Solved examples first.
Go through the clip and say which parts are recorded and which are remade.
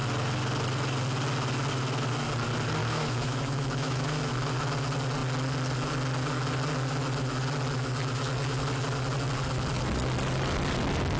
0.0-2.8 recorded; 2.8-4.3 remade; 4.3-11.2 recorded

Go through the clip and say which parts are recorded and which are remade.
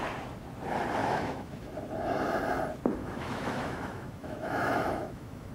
0.0-1.0 recorded; 1.0-1.7 remade; 1.7-3.0 recorded; 3.0-5.5 remade